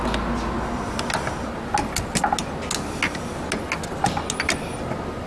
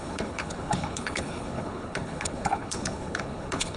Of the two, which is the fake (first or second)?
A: second